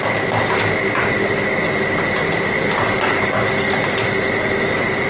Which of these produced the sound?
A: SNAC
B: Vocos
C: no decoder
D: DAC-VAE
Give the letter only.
C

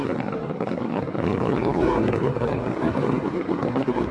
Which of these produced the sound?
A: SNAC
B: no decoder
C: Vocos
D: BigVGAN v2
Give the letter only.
A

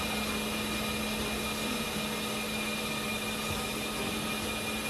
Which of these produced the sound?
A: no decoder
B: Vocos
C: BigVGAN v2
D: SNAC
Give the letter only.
A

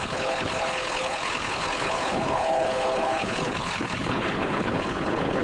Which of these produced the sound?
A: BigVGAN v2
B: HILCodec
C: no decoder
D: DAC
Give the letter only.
B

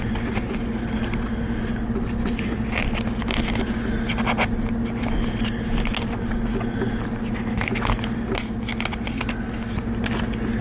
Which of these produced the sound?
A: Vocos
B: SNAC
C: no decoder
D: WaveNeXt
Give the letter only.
C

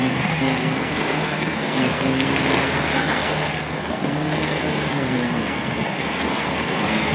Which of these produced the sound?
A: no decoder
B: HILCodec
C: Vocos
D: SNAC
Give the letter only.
D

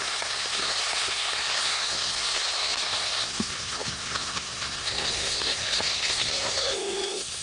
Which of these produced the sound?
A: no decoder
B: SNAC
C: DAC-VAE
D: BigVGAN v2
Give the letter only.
B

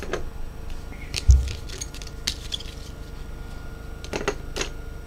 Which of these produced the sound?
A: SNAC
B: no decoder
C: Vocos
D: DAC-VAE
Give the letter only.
B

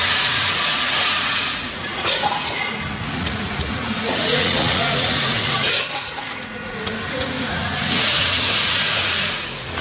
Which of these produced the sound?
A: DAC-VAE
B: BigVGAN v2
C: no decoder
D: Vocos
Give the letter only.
D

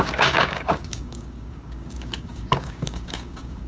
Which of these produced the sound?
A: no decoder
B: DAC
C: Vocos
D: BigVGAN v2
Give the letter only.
B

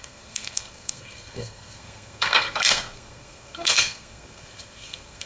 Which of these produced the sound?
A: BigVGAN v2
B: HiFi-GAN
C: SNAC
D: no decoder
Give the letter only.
C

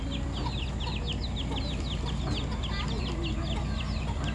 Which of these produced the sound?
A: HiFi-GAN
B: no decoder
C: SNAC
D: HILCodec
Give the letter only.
B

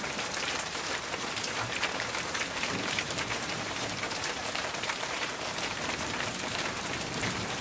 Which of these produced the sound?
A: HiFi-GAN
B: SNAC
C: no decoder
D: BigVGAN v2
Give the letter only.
D